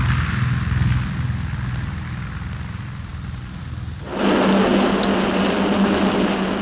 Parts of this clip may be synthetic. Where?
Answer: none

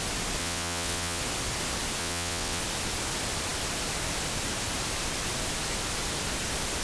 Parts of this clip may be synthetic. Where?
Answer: 0.4-1.2 (vocoder, WaveNeXt); 2.0-2.6

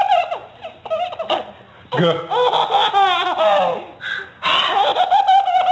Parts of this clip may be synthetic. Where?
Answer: none